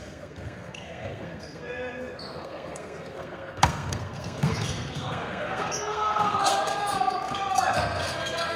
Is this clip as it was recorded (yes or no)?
no